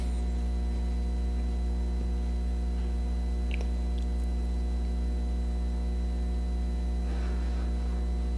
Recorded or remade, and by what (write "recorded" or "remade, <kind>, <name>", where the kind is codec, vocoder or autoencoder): recorded